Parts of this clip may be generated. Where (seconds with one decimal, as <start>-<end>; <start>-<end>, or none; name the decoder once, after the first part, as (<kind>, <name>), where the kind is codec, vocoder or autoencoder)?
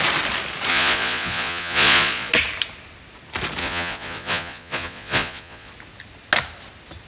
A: 0.7-2.3 (vocoder, Vocos); 3.6-5.7